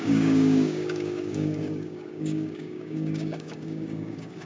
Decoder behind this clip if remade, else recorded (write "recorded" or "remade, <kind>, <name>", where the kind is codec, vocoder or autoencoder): remade, codec, DAC